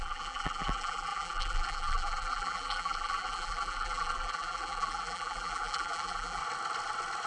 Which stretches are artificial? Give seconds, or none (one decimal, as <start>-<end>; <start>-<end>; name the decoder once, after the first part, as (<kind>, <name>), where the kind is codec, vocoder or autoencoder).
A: 0.0-6.4 (vocoder, BigVGAN v2)